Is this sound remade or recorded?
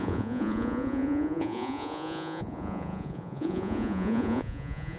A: remade